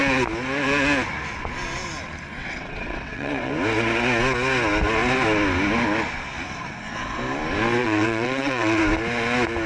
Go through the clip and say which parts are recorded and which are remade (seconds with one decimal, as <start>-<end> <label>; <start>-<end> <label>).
0.0-2.4 recorded; 2.4-3.5 remade; 3.5-7.8 recorded; 7.8-8.8 remade; 8.8-9.7 recorded